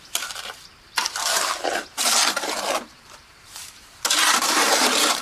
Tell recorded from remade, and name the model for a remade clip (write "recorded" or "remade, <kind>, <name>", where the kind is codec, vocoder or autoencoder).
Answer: remade, vocoder, BigVGAN v2